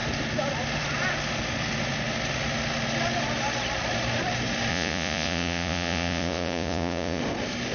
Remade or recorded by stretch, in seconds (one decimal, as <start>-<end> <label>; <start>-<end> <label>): 0.0-4.7 recorded; 4.7-7.2 remade; 7.2-7.7 recorded